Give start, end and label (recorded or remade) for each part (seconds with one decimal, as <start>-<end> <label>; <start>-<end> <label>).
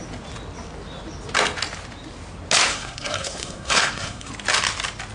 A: 0.0-2.7 recorded; 2.7-4.3 remade; 4.3-5.1 recorded